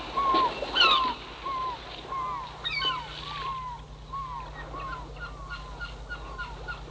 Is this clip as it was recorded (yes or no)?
yes